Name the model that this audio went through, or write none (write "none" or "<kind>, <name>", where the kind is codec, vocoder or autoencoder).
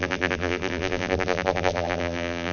vocoder, BigVGAN v2